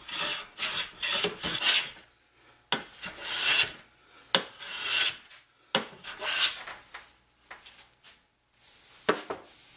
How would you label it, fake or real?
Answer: real